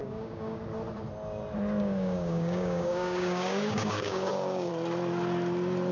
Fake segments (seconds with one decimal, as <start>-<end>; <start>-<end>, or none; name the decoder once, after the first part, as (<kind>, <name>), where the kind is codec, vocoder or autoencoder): 0.0-0.6 (codec, DAC); 1.8-4.7